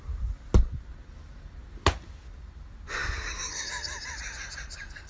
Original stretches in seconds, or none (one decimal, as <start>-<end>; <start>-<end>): 0.0-5.1

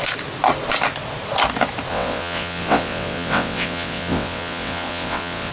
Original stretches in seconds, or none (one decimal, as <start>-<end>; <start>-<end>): 0.0-1.9

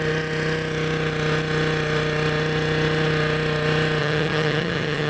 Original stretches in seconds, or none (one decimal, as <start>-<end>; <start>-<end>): 0.0-4.0

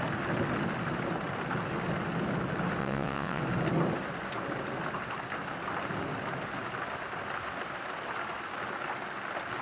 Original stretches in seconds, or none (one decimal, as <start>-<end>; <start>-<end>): 0.0-2.8; 3.4-9.6

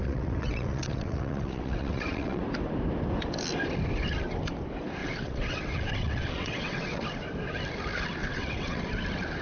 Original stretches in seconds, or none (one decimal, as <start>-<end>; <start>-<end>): 2.4-5.0; 7.0-8.2; 8.8-9.4

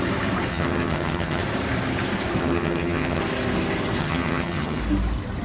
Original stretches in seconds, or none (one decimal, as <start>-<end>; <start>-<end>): 0.0-0.5; 1.4-2.4; 3.2-4.0; 4.8-5.4

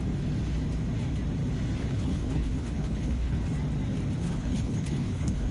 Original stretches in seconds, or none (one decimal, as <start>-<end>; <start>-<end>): 0.0-1.8; 3.4-4.2

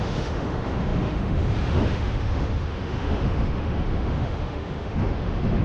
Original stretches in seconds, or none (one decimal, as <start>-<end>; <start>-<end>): none